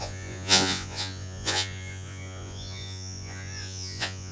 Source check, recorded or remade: remade